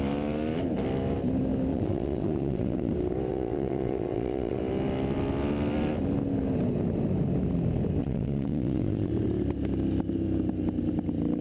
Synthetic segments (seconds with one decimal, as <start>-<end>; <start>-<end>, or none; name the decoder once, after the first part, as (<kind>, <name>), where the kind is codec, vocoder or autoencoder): 1.7-2.9 (vocoder, WaveNeXt); 3.3-4.6; 8.0-9.1